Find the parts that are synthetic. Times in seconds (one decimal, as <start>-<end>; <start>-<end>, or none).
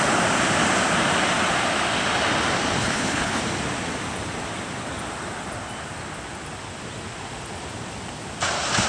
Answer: 2.8-3.4